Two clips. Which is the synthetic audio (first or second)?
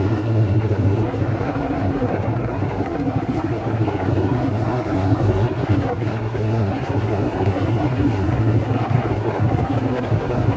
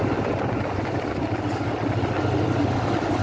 first